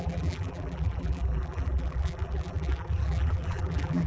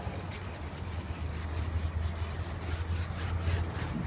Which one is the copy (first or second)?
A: first